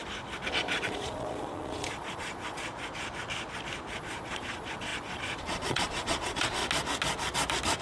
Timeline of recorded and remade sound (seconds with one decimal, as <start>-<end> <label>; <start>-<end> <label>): 0.0-0.5 recorded; 0.5-2.7 remade; 2.7-3.9 recorded; 3.9-6.6 remade; 6.6-7.8 recorded